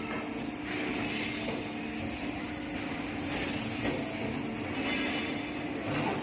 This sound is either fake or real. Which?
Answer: real